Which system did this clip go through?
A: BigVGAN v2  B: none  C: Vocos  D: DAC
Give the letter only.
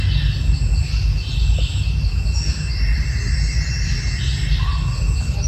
B